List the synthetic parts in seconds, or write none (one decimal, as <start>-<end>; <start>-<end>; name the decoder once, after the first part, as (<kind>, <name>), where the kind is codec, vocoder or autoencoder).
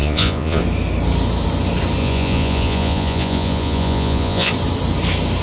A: 0.0-0.6 (vocoder, Vocos); 2.0-4.5